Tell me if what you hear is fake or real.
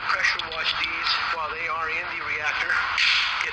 real